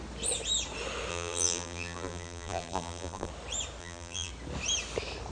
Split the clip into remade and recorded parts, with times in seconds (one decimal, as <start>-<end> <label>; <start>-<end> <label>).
0.0-1.1 recorded; 1.1-3.3 remade; 3.3-3.8 recorded; 3.8-4.3 remade; 4.3-5.3 recorded